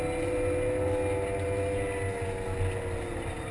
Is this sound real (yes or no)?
yes